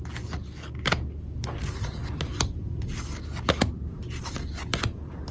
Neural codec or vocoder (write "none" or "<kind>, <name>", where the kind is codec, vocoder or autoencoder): none